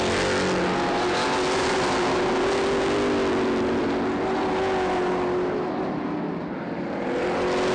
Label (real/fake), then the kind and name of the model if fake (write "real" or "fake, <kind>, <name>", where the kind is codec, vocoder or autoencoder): real